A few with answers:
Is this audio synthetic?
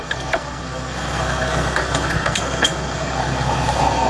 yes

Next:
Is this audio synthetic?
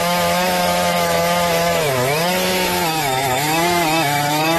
yes